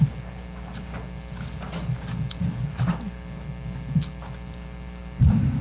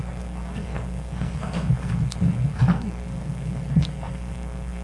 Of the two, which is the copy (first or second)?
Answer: second